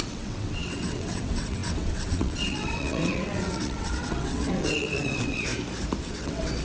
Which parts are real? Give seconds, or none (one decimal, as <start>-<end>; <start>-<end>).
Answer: 5.5-6.0